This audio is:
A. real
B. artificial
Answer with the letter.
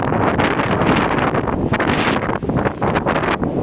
A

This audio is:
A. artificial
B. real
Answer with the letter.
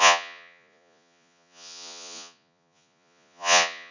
A